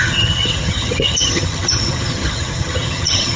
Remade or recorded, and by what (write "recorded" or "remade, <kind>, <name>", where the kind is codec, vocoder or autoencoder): remade, vocoder, HiFi-GAN